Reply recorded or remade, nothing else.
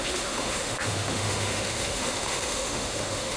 remade